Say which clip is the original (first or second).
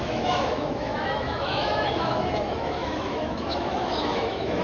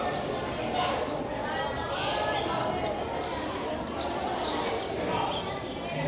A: second